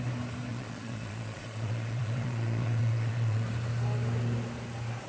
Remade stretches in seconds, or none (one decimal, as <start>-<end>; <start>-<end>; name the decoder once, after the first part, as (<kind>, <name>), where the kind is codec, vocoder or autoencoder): 0.5-3.5 (vocoder, Vocos)